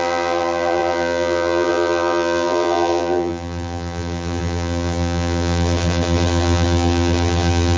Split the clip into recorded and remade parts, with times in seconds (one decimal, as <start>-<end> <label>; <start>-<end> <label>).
0.0-7.8 remade